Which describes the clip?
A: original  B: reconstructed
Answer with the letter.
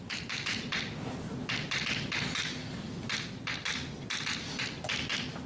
A